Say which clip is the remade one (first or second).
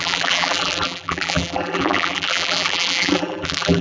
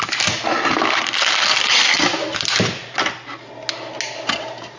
first